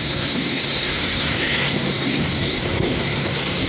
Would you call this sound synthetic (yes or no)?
yes